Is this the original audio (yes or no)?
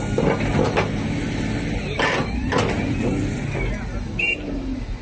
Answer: yes